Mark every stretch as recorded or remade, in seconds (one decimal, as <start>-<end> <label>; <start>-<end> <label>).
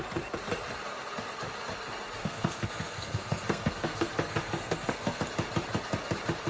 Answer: 0.0-2.2 recorded; 2.2-5.2 remade; 5.2-6.5 recorded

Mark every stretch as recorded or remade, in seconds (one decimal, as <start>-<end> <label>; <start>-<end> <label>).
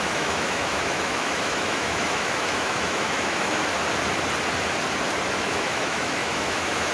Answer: 0.0-3.6 remade; 3.6-5.3 recorded; 5.3-6.9 remade